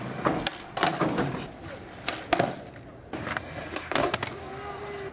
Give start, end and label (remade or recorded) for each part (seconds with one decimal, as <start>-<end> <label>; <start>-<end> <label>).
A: 0.0-5.1 recorded